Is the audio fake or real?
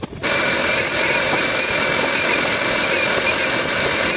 real